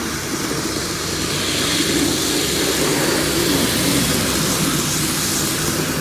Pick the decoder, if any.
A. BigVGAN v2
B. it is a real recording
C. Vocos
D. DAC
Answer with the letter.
B